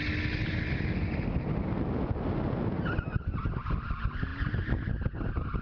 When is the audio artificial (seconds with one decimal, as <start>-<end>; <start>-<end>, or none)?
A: none